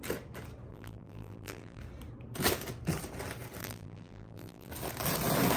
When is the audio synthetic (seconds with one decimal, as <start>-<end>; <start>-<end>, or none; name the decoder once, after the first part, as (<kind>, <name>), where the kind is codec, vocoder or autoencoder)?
0.7-1.8 (vocoder, BigVGAN v2); 3.6-4.7